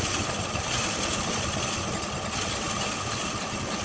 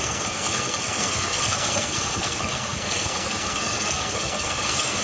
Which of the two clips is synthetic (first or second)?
second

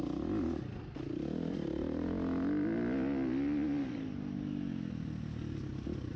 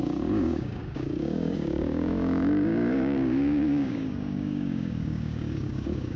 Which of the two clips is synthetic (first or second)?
second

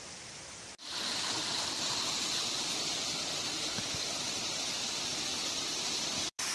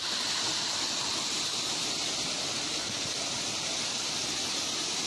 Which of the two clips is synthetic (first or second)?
first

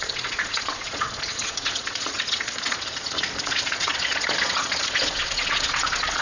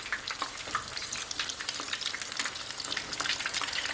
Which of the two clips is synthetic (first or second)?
first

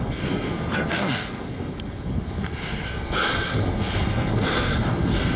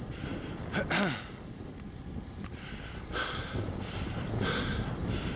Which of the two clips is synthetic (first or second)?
first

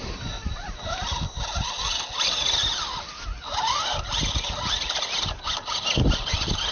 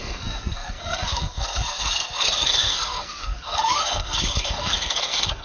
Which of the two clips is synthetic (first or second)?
second